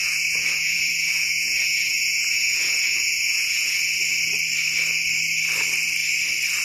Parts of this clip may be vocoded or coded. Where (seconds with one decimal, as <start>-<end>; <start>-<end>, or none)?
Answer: 0.0-4.0

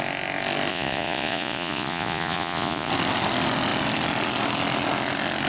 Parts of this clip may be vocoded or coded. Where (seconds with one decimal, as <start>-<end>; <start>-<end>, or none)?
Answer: 0.7-2.9

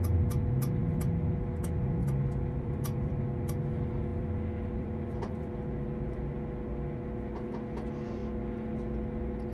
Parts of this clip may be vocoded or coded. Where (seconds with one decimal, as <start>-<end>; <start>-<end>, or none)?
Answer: 2.0-3.2; 4.1-6.3

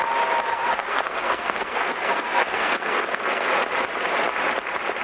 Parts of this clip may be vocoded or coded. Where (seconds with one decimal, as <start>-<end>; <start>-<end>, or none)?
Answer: 0.5-3.5

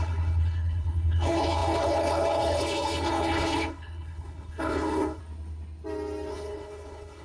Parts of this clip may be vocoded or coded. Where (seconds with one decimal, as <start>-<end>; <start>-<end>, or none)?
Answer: 0.0-5.2; 6.3-7.2

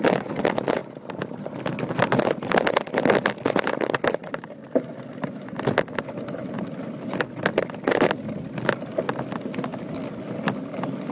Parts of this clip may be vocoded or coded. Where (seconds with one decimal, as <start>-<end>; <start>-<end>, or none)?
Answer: 0.8-1.4; 4.2-5.7

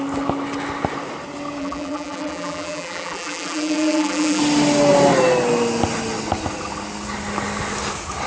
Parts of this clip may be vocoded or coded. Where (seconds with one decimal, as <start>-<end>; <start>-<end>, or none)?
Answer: 1.6-4.4